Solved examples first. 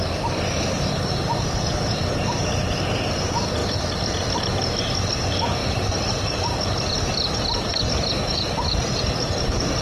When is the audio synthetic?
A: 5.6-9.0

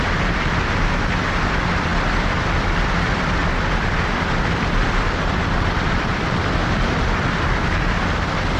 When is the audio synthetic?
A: 0.0-3.4; 4.0-8.6

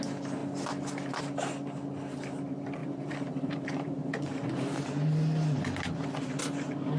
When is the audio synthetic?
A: 2.8-5.1

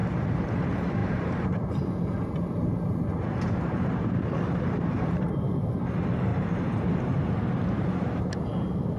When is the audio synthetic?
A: 0.0-0.5; 1.0-5.8; 6.3-8.5

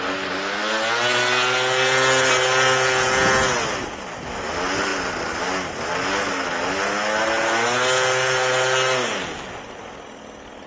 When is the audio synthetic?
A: none